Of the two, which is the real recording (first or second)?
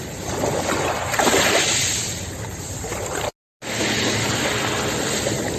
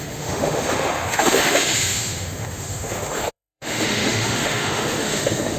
first